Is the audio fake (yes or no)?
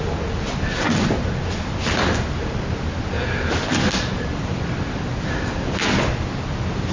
no